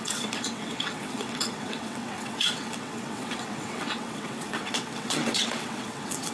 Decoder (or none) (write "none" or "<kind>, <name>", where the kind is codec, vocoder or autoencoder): vocoder, WaveNeXt